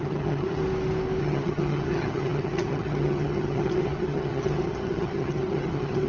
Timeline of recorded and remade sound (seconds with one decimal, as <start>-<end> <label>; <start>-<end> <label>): 0.0-0.6 remade; 0.6-1.2 recorded; 1.2-6.1 remade